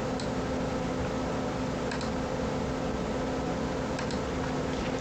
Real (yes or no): yes